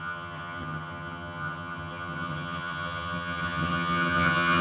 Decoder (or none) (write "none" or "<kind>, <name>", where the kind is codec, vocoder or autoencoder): vocoder, HiFi-GAN